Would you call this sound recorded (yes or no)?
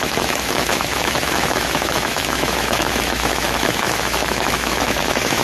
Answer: no